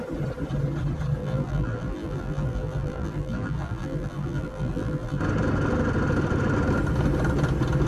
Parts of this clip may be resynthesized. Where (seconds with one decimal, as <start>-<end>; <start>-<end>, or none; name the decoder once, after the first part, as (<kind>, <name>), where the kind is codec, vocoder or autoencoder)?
1.2-5.2 (vocoder, BigVGAN v2)

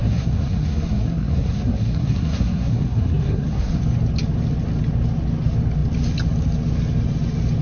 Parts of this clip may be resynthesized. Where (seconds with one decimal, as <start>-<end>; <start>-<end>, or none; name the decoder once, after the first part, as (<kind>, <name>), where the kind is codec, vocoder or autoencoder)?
0.0-3.8 (codec, SNAC)